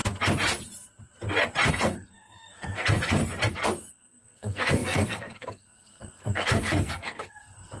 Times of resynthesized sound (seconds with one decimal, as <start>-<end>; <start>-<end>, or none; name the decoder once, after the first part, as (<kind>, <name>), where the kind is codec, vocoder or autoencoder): 1.7-3.2 (codec, SNAC); 3.9-7.8